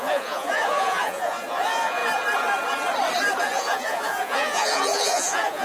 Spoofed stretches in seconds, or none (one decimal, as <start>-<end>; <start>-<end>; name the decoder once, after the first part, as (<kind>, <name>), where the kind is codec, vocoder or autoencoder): 0.0-2.0 (vocoder, Vocos); 3.4-5.6